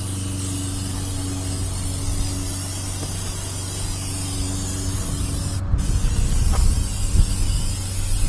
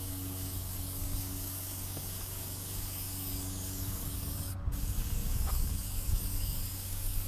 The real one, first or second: first